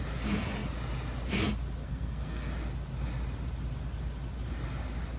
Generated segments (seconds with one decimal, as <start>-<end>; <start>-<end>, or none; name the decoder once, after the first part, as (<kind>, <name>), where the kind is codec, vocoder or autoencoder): 1.8-2.5 (codec, SNAC)